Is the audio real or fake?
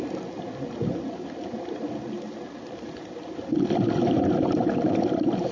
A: real